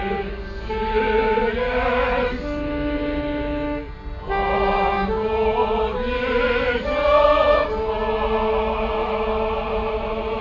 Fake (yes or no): no